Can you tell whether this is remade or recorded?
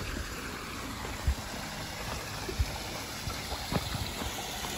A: recorded